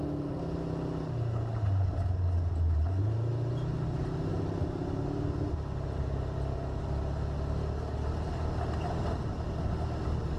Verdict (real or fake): real